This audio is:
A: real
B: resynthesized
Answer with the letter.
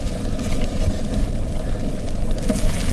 A